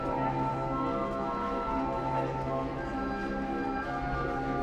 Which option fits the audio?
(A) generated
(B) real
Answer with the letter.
B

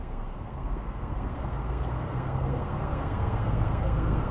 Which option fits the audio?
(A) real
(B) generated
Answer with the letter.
B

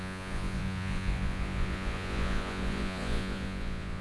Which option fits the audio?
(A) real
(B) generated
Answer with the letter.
B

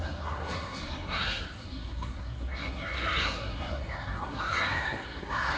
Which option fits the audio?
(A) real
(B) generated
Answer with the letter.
B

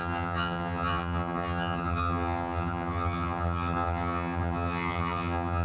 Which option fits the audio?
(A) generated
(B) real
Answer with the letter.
A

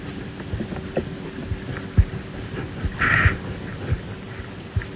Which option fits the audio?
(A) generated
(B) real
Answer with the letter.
B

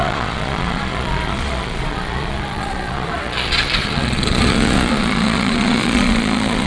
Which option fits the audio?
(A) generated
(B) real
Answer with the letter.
A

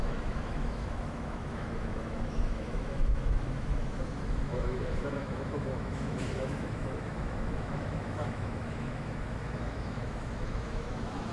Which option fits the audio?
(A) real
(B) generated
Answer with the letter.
B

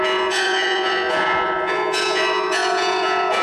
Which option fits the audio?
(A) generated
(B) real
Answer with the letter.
A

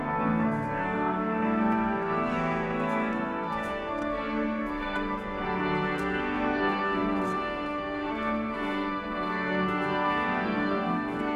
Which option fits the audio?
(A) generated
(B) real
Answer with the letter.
A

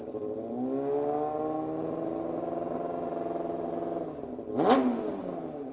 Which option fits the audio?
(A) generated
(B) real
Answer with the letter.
B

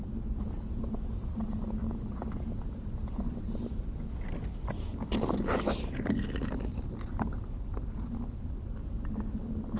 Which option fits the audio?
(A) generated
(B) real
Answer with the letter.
B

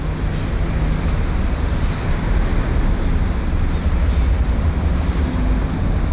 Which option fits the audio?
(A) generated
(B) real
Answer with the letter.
B